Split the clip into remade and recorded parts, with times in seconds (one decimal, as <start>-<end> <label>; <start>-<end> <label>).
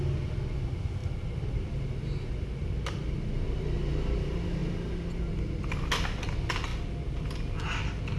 0.0-8.2 recorded